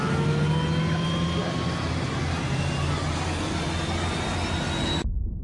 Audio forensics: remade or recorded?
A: recorded